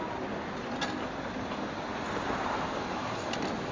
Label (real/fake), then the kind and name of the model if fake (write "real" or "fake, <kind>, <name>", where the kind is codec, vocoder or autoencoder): real